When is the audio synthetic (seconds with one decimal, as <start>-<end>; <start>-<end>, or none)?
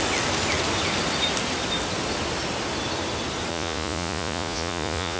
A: 3.5-5.2